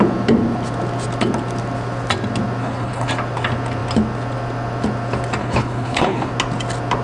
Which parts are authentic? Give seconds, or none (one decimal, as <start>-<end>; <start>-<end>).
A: 0.0-2.6; 3.1-5.4; 6.3-7.0